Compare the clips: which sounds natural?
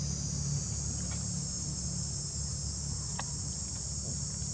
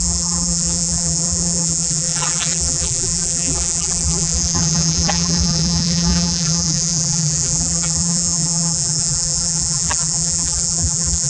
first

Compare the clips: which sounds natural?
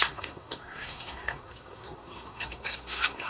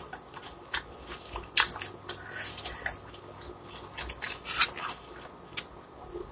second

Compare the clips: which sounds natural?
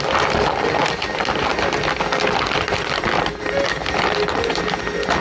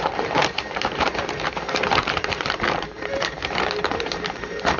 first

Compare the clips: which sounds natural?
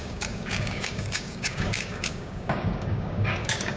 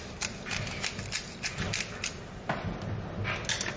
second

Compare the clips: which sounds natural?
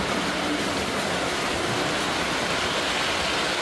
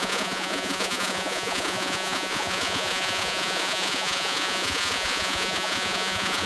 first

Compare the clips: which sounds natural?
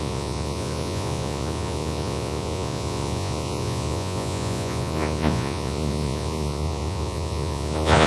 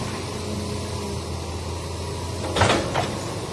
second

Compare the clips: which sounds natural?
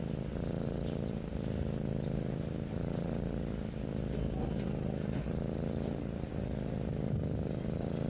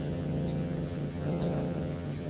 first